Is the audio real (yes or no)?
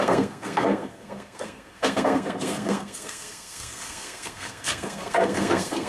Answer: no